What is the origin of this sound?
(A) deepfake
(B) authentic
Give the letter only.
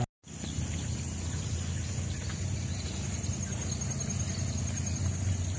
B